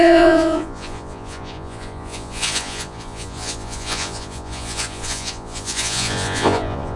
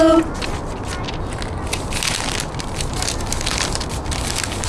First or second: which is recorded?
second